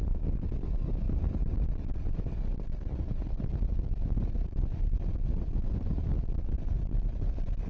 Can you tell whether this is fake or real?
real